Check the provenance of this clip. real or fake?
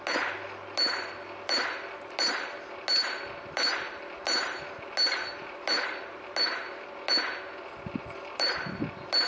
real